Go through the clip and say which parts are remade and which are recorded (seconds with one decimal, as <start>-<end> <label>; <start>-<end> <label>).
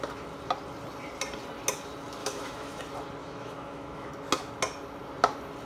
0.0-2.2 recorded; 2.2-2.8 remade; 2.8-3.2 recorded; 3.2-4.1 remade; 4.1-5.7 recorded